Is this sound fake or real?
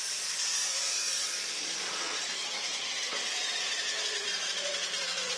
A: fake